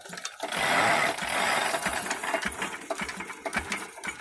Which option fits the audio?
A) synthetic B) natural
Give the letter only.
B